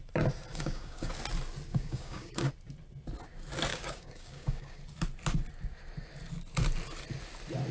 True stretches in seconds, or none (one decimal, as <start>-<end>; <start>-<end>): 0.0-0.5; 1.1-1.7; 2.5-3.7; 4.8-7.7